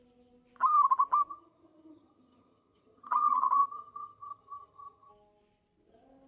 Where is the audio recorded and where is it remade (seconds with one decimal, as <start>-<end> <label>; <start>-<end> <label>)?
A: 0.0-1.3 recorded; 1.3-5.1 remade; 5.1-6.3 recorded